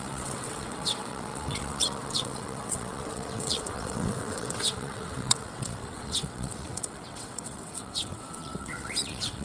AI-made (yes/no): yes